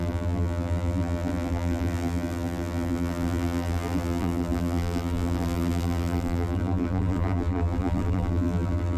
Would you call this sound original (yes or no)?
no